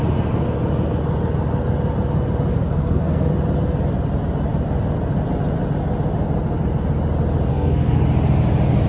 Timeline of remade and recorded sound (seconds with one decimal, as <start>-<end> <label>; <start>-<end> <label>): 0.0-2.5 recorded; 2.5-3.3 remade; 3.3-7.5 recorded; 7.5-8.0 remade; 8.0-8.9 recorded